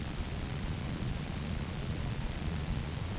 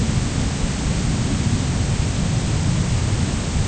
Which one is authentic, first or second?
second